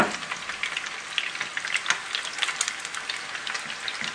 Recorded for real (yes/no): yes